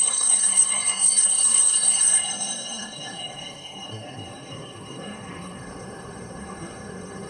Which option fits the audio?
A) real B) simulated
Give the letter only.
B